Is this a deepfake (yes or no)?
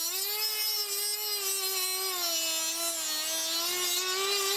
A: no